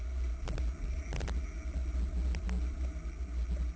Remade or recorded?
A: recorded